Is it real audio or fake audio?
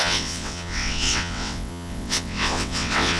fake